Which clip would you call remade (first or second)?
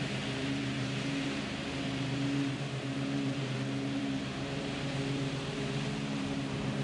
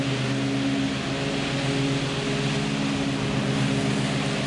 first